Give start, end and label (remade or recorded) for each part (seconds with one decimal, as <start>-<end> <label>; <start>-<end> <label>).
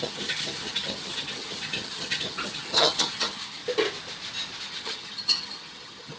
0.0-3.6 remade; 3.6-4.6 recorded; 4.6-6.2 remade